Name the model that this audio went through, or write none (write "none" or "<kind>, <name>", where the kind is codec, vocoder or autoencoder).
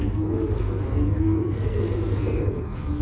codec, SNAC